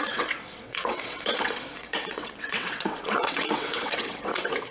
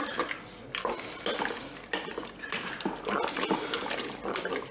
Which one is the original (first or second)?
second